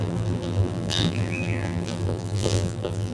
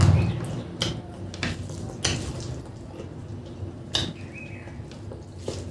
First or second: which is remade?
first